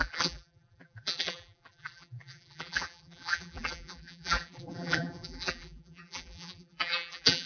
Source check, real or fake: fake